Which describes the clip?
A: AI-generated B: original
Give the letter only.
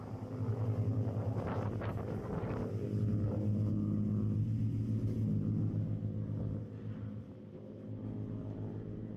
B